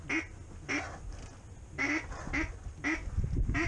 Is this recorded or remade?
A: recorded